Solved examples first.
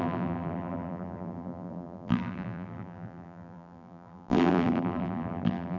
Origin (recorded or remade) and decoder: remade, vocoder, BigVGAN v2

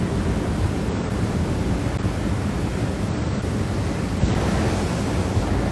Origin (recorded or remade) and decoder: recorded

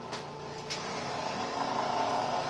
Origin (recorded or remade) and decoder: recorded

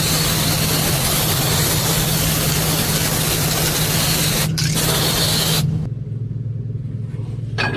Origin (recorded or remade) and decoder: recorded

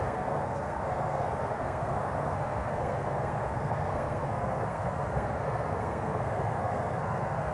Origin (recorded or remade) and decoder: remade, codec, SNAC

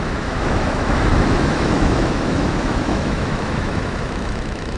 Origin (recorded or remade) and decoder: remade, autoencoder, DAC-VAE